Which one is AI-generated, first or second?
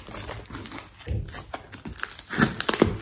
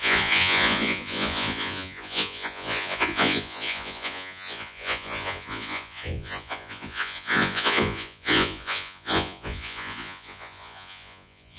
second